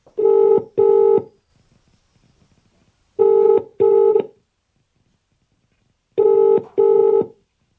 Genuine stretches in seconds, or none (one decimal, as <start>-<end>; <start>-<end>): 0.0-7.8